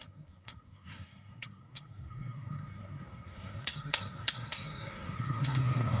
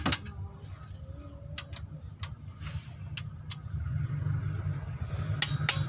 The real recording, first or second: second